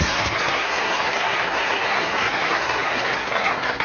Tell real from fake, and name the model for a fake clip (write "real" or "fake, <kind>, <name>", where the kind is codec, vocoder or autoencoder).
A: fake, codec, SNAC